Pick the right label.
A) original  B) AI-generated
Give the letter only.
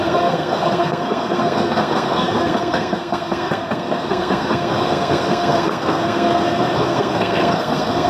B